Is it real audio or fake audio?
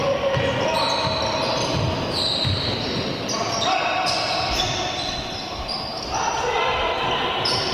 fake